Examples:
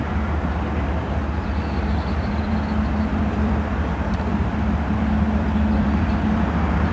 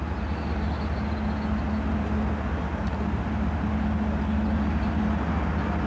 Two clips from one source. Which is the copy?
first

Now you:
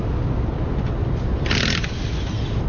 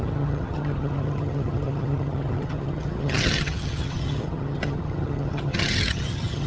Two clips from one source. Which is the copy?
second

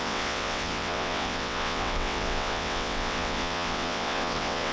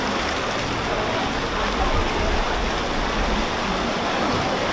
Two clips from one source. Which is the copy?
first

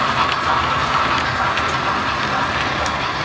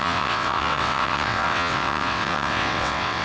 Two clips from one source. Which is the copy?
second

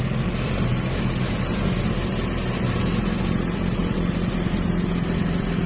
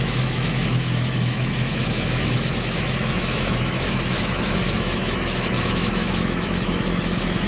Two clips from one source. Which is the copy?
second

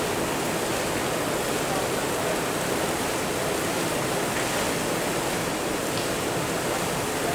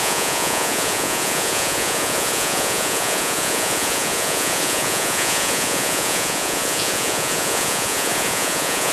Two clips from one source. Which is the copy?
second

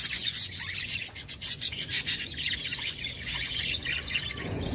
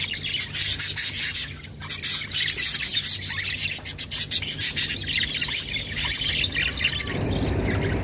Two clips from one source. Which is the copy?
first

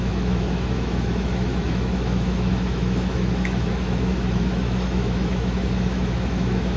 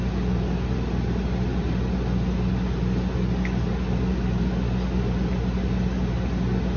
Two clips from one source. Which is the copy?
first